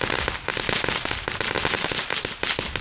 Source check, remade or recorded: recorded